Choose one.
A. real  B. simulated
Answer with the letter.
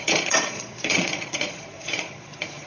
B